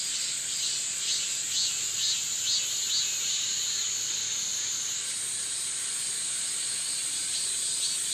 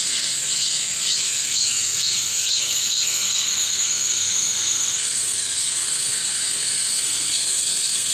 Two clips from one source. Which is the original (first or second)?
first